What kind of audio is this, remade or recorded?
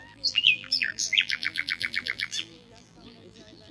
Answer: remade